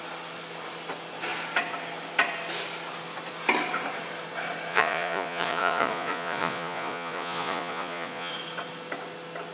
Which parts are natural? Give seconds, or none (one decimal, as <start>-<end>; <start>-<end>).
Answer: 0.0-4.7; 8.3-9.5